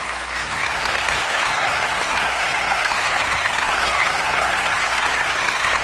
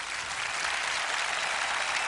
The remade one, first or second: first